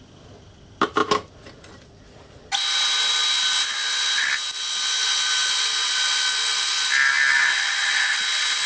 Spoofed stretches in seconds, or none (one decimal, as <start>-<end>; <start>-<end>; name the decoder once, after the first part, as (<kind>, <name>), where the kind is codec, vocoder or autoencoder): none